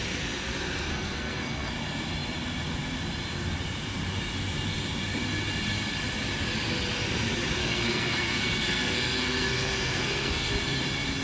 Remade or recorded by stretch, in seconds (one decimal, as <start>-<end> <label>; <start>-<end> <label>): 0.0-0.9 recorded; 0.9-1.7 remade; 1.7-7.6 recorded; 7.6-10.5 remade; 10.5-11.2 recorded